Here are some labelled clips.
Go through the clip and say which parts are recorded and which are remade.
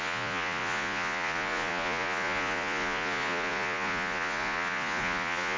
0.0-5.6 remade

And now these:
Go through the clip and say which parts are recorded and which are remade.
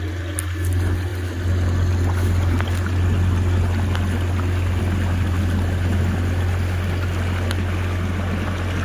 0.0-8.8 recorded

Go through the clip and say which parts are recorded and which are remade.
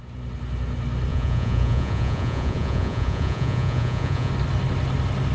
0.0-1.1 recorded; 1.1-4.3 remade; 4.3-5.3 recorded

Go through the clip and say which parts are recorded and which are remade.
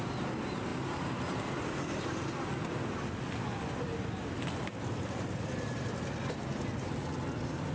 0.0-7.7 recorded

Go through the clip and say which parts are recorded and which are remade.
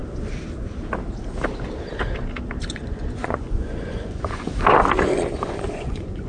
0.0-2.7 recorded; 2.7-4.5 remade; 4.5-5.0 recorded; 5.0-6.3 remade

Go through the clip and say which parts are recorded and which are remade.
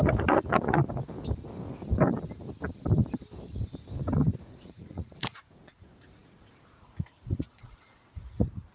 0.0-0.8 remade; 0.8-4.3 recorded; 4.3-8.7 remade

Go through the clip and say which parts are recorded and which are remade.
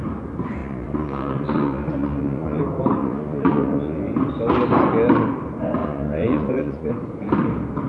0.0-0.6 recorded; 0.6-2.6 remade; 2.6-3.0 recorded; 3.0-4.0 remade; 4.0-5.8 recorded; 5.8-6.9 remade; 6.9-7.9 recorded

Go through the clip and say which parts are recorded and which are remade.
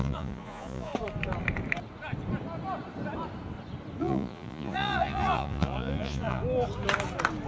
0.0-0.9 remade; 0.9-4.0 recorded; 4.0-6.4 remade; 6.4-7.5 recorded